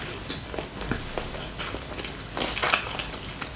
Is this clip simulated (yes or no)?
no